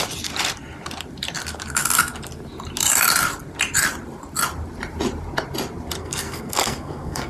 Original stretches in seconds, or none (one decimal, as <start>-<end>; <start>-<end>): 0.0-6.0

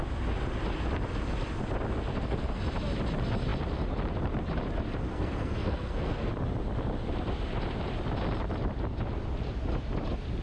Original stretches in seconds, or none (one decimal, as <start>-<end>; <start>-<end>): 0.0-2.1; 2.6-5.1; 6.3-10.4

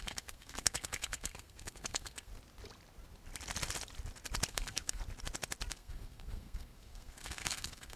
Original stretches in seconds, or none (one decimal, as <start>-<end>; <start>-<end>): 2.3-4.5; 5.0-5.7

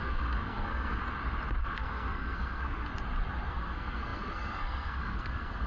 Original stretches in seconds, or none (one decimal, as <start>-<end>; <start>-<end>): 1.0-1.6; 2.9-3.5

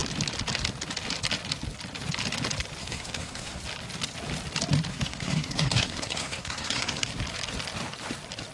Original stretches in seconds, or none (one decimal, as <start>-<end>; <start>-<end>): 0.0-2.8; 3.6-4.9; 7.1-8.5

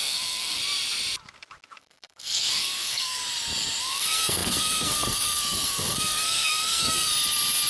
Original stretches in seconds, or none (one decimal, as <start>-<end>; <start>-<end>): 0.6-1.8; 3.2-3.8; 7.1-7.7